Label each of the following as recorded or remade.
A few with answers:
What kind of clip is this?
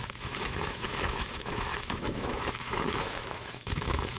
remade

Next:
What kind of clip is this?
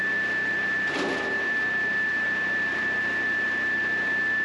recorded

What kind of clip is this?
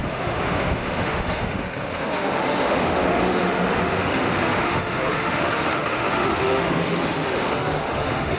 remade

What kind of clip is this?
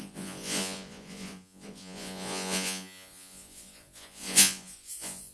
remade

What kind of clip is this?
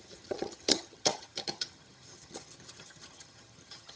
remade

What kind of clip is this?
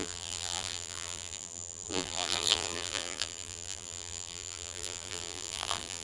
remade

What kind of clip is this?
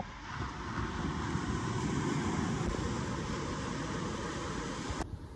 recorded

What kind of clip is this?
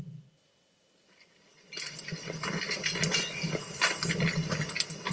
recorded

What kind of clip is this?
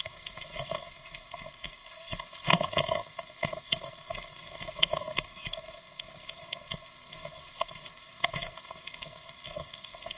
remade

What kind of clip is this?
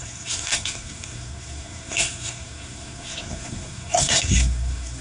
remade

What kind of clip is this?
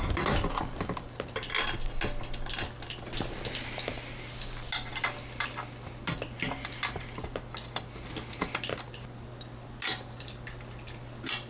recorded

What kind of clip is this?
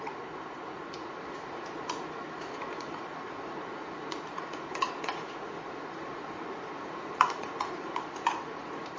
remade